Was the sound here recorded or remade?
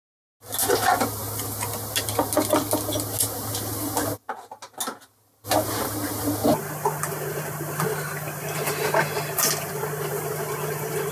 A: recorded